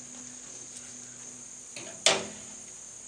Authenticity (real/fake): real